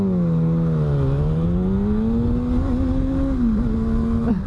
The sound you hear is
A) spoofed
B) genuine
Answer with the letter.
B